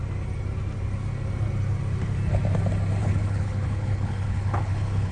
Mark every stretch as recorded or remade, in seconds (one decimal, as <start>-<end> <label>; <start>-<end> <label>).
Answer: 0.0-3.0 recorded; 3.0-5.1 remade